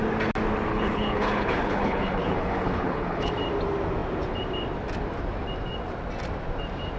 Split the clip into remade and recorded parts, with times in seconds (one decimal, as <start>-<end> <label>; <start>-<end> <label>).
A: 0.0-0.7 recorded; 0.7-3.3 remade; 3.3-7.0 recorded